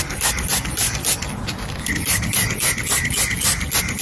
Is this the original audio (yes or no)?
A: yes